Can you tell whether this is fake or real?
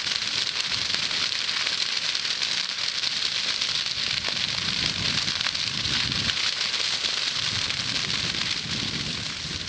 real